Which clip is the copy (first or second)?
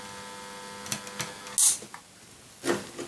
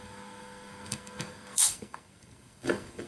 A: second